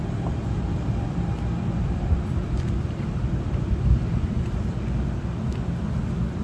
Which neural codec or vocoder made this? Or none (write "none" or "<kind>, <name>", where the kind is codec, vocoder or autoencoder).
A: vocoder, BigVGAN v2